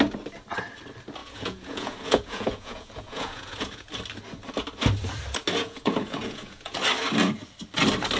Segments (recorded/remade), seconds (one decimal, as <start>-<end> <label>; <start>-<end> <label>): 0.0-1.2 recorded; 1.2-3.9 remade; 3.9-5.6 recorded; 5.6-6.8 remade; 6.8-8.2 recorded

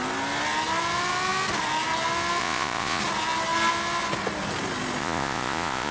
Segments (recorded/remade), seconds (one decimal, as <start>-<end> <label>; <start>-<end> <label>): 0.0-2.4 recorded; 2.4-3.0 remade; 3.0-5.0 recorded; 5.0-5.9 remade

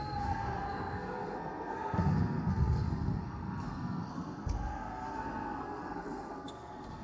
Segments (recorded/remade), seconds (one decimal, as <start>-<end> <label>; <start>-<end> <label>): 0.0-7.0 remade

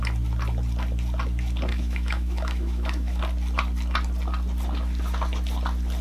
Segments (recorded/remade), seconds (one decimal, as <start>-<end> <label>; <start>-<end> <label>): 0.0-1.7 recorded; 1.7-3.2 remade; 3.2-6.0 recorded

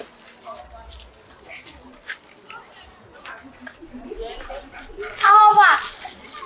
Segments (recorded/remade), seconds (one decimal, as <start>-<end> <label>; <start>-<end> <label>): 0.0-3.8 recorded; 3.8-5.4 remade; 5.4-6.5 recorded